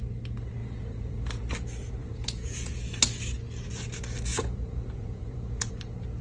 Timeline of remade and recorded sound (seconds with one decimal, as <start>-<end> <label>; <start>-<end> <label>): 0.0-0.6 recorded; 0.6-1.4 remade; 1.4-2.0 recorded; 2.0-2.7 remade; 2.7-4.3 recorded; 4.3-5.7 remade; 5.7-6.2 recorded